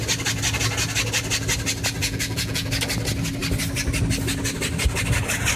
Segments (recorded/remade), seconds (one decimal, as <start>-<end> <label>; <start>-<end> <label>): 0.0-2.0 recorded; 2.0-2.7 remade; 2.7-5.6 recorded